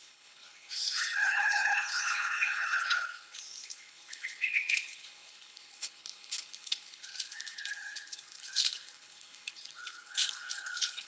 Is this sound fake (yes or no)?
yes